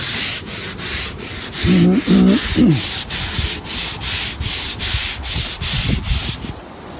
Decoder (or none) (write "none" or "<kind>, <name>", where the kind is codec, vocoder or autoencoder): none